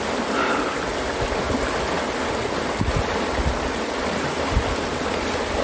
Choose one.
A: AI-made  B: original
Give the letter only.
B